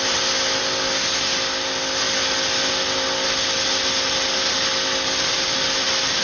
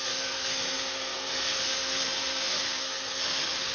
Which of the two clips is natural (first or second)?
first